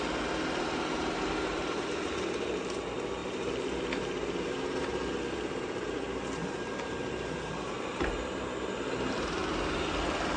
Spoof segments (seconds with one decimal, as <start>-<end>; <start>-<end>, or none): 0.0-9.4